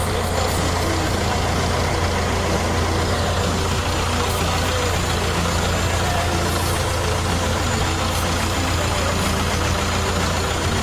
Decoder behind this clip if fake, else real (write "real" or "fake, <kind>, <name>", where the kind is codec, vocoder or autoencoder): real